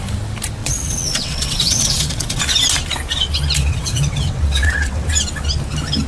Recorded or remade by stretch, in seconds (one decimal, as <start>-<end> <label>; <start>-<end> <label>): 0.0-0.6 recorded; 0.6-2.4 remade; 2.4-3.6 recorded; 3.6-5.1 remade; 5.1-6.1 recorded